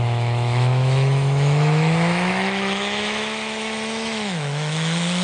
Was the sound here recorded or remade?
remade